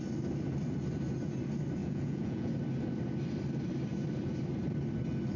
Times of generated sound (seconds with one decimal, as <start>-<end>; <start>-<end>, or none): 1.8-2.5